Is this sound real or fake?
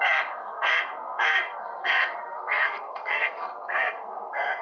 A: fake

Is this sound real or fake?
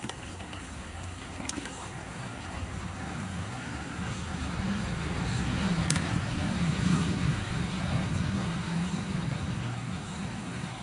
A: fake